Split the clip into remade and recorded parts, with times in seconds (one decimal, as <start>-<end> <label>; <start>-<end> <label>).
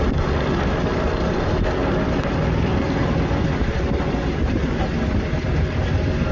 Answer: 0.0-6.3 recorded